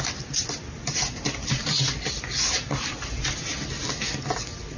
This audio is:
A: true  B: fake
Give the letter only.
A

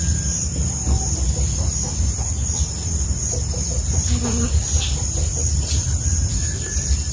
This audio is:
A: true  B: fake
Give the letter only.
A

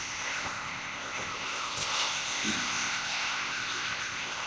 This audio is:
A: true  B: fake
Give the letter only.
B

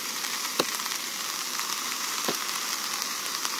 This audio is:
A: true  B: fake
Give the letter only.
B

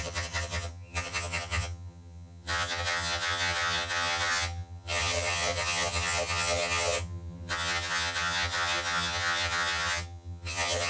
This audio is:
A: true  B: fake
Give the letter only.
B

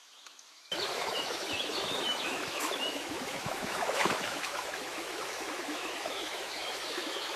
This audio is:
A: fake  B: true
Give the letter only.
A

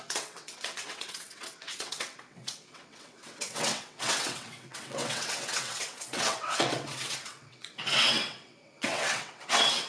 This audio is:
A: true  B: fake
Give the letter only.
B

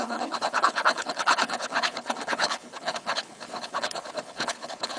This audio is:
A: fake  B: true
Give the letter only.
A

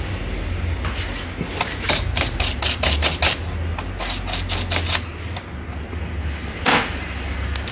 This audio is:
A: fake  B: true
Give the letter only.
B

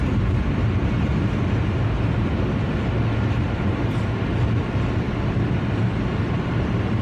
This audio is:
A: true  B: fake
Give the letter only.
A